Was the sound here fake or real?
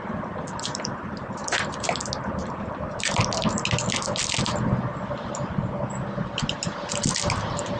real